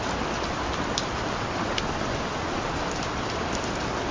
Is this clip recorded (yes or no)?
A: yes